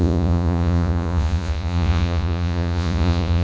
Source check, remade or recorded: remade